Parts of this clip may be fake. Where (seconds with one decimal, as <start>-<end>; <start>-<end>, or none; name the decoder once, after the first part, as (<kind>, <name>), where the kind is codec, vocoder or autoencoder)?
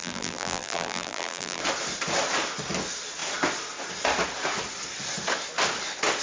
0.0-1.6 (vocoder, BigVGAN v2)